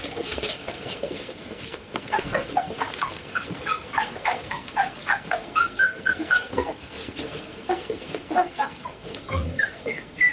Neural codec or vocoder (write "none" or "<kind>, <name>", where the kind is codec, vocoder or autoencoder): codec, SNAC